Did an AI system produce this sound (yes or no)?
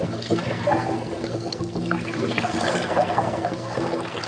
yes